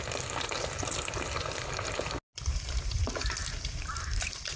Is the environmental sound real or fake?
real